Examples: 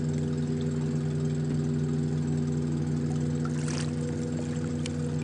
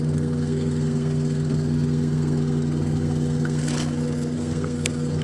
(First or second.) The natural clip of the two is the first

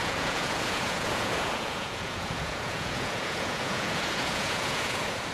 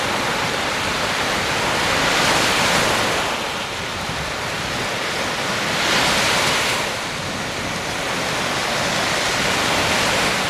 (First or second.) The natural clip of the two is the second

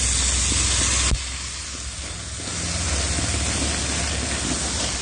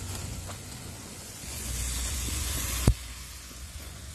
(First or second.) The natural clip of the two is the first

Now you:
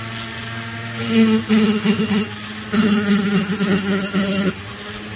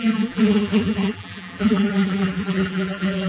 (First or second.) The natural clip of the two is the first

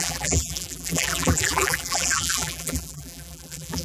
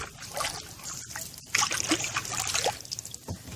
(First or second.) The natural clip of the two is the second